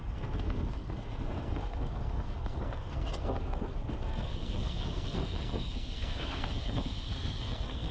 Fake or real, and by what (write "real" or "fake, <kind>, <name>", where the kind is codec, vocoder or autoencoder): fake, codec, SNAC